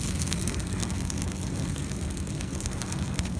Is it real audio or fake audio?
fake